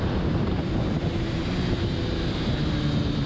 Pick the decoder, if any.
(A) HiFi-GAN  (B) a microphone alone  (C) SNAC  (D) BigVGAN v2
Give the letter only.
D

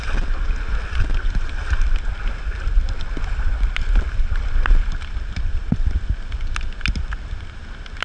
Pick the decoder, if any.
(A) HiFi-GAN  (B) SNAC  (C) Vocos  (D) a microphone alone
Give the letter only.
D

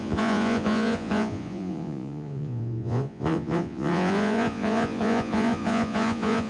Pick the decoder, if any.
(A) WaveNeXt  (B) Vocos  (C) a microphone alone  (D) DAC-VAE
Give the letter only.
B